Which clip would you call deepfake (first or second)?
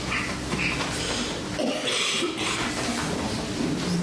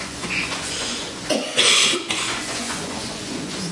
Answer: second